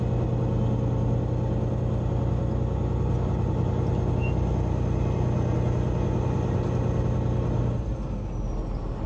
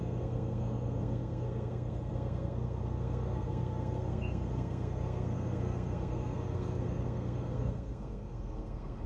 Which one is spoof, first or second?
second